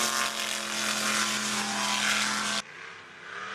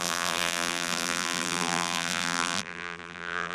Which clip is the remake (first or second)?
second